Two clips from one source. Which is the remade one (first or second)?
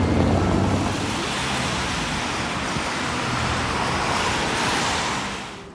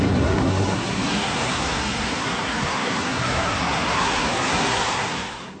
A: second